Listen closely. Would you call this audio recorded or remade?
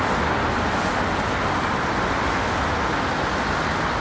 recorded